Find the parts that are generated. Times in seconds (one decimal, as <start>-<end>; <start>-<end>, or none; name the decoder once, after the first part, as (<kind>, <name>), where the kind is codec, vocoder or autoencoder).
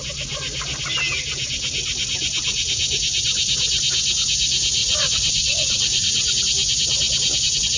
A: 4.8-6.4 (vocoder, Vocos)